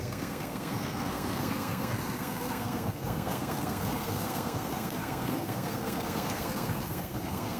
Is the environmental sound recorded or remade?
remade